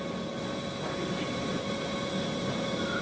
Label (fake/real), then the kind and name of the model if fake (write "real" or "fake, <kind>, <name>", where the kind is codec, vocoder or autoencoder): real